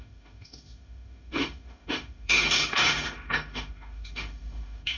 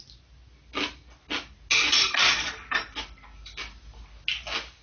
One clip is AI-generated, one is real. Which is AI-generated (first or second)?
first